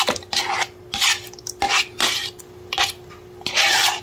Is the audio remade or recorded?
recorded